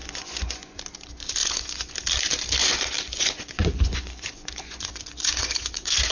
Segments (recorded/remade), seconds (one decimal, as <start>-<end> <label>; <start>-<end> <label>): 0.0-0.8 remade; 0.8-1.4 recorded; 1.4-1.9 remade; 1.9-2.6 recorded; 2.6-6.1 remade